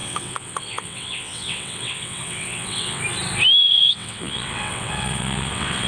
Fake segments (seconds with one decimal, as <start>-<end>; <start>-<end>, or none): 0.0-3.0; 3.7-5.9